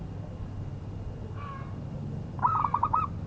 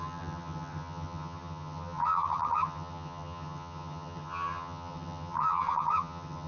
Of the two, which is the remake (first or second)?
second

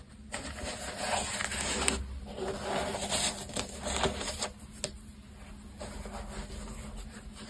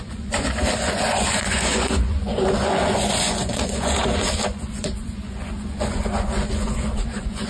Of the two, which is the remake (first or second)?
second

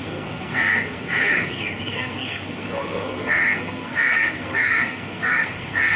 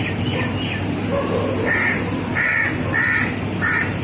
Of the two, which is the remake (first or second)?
first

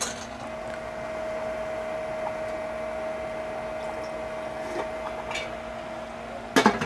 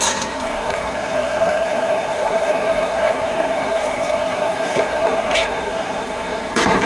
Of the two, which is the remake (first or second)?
second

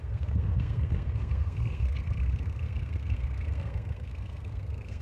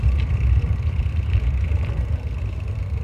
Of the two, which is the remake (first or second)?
first